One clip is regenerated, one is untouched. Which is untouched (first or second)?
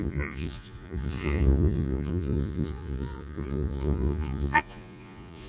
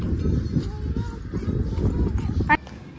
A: second